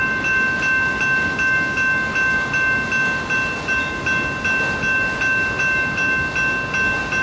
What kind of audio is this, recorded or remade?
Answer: recorded